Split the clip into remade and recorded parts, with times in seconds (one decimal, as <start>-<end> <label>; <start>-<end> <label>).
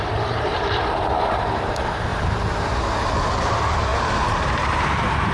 0.0-2.1 remade; 2.1-3.4 recorded; 3.4-5.3 remade